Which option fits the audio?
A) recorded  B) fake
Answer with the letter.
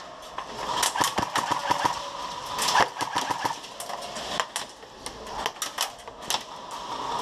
A